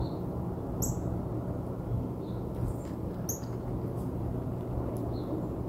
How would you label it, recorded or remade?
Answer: recorded